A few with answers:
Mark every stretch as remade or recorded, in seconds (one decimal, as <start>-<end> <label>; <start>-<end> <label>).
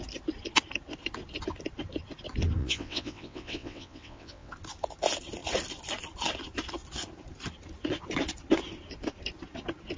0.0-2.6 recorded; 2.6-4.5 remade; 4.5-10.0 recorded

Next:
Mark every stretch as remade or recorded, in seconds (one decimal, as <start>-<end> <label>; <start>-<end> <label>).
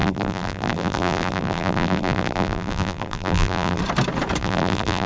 0.0-3.8 remade; 3.8-4.4 recorded; 4.4-5.1 remade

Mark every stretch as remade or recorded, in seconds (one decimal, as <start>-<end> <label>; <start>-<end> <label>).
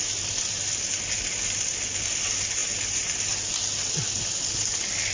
0.0-5.1 recorded